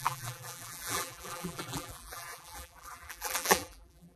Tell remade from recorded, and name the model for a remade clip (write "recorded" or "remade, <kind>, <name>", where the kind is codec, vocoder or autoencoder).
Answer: remade, vocoder, BigVGAN v2